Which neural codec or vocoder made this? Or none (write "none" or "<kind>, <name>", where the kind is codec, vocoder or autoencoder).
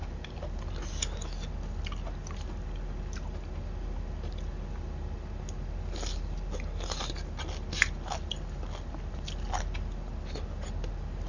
none